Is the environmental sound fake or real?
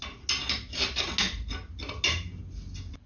real